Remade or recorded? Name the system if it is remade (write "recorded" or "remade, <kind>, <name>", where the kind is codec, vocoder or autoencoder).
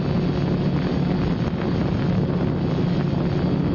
recorded